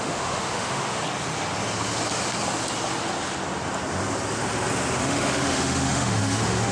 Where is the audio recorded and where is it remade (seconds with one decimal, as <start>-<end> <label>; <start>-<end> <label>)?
0.0-1.0 remade; 1.0-5.0 recorded; 5.0-6.7 remade